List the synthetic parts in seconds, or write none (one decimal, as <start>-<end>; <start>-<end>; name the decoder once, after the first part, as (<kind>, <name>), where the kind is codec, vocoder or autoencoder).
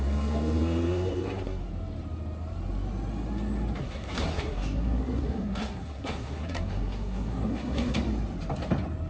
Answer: 0.0-1.6 (codec, SNAC); 3.8-8.0